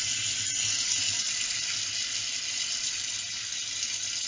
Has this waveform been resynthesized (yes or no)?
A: no